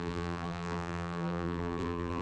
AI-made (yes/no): yes